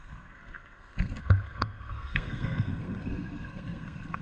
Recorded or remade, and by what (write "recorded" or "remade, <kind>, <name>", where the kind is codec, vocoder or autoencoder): remade, codec, SNAC